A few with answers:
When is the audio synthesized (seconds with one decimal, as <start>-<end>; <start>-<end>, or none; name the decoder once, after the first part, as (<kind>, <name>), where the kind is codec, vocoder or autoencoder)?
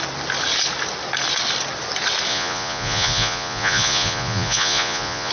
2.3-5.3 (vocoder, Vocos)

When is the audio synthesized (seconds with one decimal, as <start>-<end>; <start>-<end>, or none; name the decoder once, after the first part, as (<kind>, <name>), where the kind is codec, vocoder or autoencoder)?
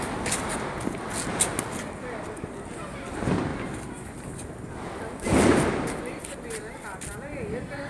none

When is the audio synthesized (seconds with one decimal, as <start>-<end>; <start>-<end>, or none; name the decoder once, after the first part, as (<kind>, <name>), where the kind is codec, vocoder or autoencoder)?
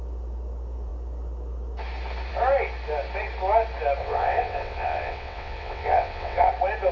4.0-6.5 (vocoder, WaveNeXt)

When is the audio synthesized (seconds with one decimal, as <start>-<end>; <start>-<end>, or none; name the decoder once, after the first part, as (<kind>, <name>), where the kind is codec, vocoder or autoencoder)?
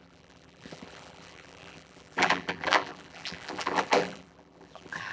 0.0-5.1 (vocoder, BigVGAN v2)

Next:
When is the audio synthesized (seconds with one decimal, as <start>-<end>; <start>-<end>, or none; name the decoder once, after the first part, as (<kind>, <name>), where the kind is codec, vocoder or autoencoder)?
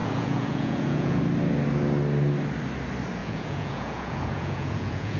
0.0-1.2 (vocoder, Vocos); 3.2-5.2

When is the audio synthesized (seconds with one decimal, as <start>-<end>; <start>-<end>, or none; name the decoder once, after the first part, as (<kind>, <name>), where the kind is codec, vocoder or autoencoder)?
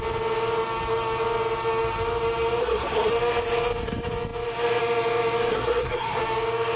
2.6-3.1 (codec, SNAC); 5.5-6.2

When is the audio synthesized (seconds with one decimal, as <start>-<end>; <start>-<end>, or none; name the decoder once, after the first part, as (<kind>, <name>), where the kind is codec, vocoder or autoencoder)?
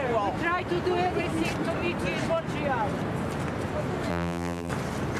4.1-4.7 (vocoder, BigVGAN v2)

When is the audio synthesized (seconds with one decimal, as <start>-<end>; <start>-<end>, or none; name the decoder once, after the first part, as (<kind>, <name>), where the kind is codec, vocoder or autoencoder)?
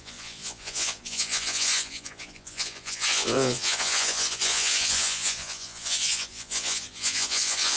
0.0-7.8 (vocoder, Vocos)